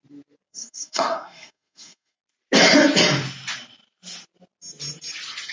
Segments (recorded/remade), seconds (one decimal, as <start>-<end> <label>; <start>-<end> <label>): 0.0-0.5 recorded; 0.5-2.2 remade; 2.2-5.5 recorded